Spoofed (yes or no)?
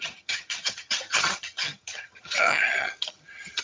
yes